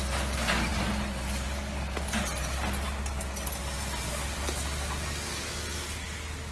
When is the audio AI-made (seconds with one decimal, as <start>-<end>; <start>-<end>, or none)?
none